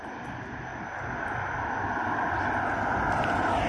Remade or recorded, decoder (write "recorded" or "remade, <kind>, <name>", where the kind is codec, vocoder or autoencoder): recorded